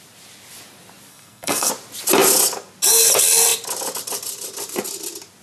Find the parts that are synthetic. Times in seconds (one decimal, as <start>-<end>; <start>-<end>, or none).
1.1-1.7